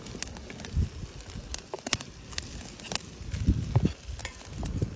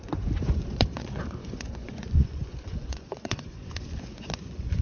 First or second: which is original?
first